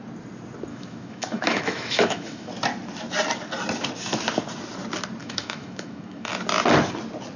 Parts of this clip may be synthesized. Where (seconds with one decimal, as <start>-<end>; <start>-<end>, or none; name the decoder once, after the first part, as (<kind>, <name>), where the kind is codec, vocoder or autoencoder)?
0.7-2.5 (autoencoder, DAC-VAE); 5.2-6.3